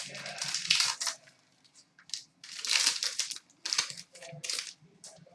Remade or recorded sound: recorded